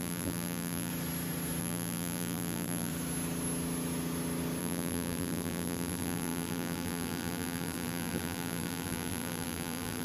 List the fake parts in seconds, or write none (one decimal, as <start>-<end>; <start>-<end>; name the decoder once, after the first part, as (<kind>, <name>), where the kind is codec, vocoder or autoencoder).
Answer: 0.0-0.9 (vocoder, BigVGAN v2); 1.6-2.9; 4.6-10.0